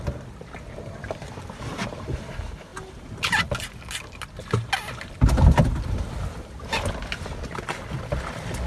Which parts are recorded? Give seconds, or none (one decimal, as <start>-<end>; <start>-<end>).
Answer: 0.0-8.7